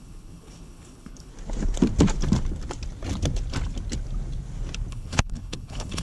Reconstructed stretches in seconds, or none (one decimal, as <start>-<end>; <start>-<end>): 0.0-1.3; 4.9-6.0